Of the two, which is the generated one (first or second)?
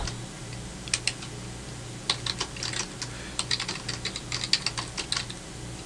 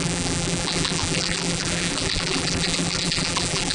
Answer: second